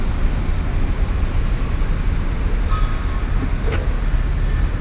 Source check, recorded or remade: recorded